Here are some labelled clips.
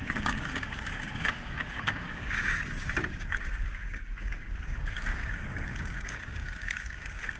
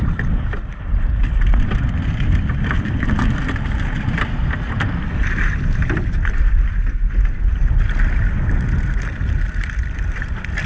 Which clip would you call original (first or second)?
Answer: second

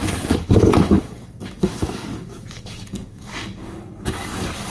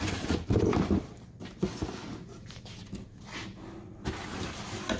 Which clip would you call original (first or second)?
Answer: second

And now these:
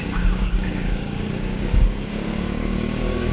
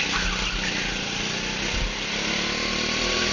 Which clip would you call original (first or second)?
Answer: second